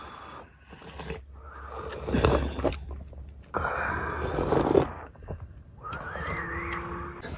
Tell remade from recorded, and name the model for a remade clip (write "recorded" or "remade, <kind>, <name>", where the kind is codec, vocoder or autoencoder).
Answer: recorded